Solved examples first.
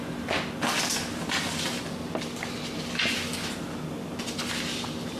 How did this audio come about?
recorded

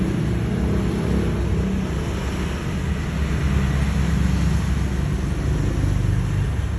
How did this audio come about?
recorded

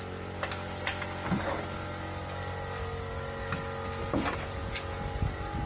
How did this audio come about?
recorded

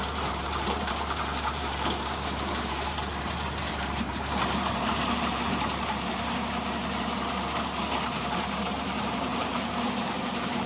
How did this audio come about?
remade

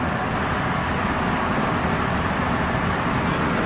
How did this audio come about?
recorded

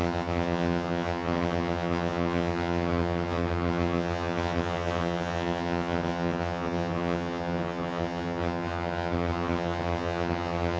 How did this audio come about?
remade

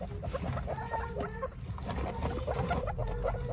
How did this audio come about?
recorded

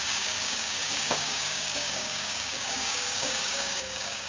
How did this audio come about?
remade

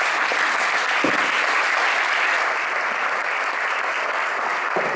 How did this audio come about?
recorded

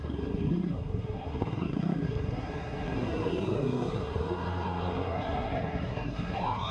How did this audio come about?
remade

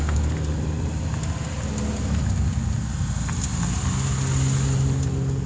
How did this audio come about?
recorded